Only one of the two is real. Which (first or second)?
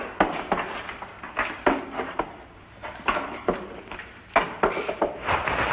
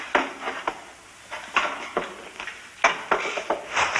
second